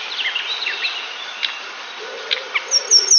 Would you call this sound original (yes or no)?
yes